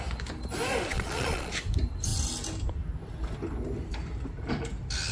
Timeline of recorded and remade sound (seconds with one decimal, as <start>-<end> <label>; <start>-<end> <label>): 0.0-0.9 recorded; 0.9-1.5 remade; 1.5-5.1 recorded